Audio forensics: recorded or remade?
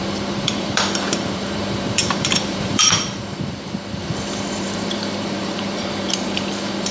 remade